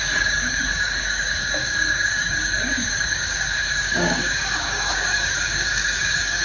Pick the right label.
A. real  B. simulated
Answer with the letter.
B